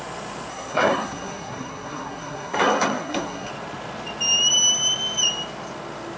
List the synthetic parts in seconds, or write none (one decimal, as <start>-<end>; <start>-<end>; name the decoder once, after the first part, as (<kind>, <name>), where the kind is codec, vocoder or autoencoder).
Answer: 0.5-3.5 (codec, SNAC)